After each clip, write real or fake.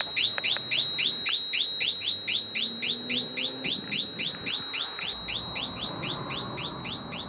real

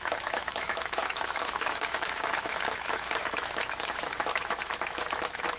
fake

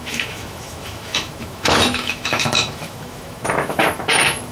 fake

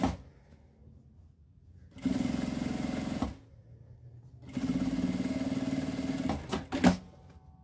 real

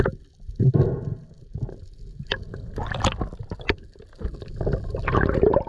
real